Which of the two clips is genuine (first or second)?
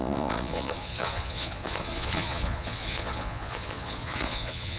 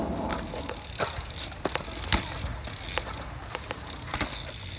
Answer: second